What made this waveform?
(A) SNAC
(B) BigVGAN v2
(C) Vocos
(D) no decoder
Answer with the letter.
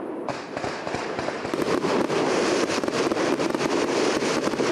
B